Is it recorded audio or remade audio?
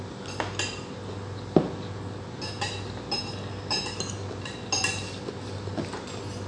recorded